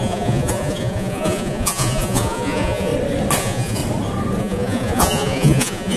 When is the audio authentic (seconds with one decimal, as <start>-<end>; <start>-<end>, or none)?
2.9-3.4; 3.8-4.4